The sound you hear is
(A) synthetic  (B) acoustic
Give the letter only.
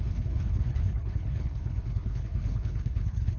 A